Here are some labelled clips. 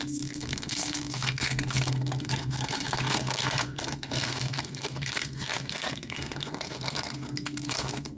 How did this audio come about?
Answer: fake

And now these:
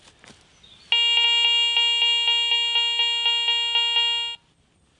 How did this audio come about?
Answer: real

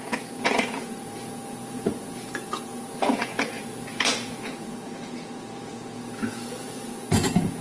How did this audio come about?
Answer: fake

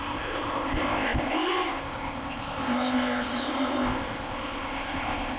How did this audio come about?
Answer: fake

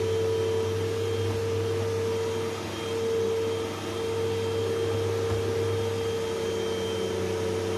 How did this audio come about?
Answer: real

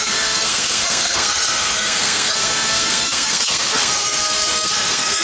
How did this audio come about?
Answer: fake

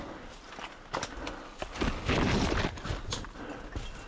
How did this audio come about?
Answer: real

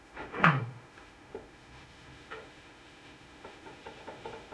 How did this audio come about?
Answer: fake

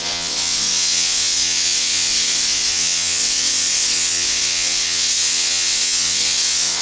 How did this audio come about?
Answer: fake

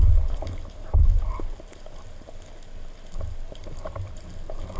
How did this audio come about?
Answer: real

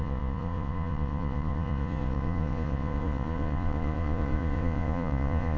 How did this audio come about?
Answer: fake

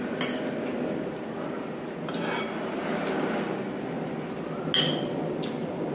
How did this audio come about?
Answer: real